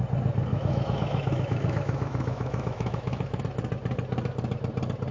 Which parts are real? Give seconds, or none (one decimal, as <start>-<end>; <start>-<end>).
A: 0.0-0.5; 3.4-5.1

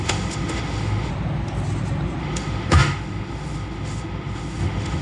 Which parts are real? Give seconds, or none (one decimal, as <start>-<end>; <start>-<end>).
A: 1.1-2.2